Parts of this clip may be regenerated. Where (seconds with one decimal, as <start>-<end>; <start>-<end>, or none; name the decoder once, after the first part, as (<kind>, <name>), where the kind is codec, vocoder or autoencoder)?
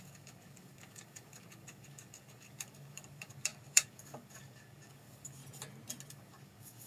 0.0-5.4 (codec, DAC); 6.1-6.9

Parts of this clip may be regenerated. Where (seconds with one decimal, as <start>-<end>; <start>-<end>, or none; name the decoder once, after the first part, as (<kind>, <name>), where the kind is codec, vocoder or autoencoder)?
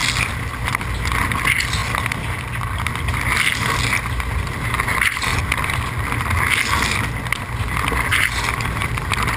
none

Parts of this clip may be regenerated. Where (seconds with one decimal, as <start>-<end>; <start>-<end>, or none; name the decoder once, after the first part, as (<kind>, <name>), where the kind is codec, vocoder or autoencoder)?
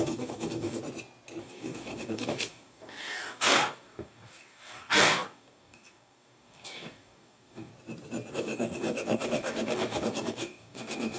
0.0-0.8 (codec, DAC); 1.4-7.7; 8.3-11.2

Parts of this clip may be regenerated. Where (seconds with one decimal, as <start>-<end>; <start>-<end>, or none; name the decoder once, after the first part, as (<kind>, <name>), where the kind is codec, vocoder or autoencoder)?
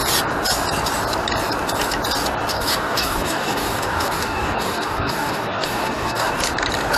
2.5-6.3 (codec, DAC)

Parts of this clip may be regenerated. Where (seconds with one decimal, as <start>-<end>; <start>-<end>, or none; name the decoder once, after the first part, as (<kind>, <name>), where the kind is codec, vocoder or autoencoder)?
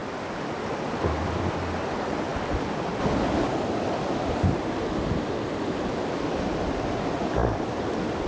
none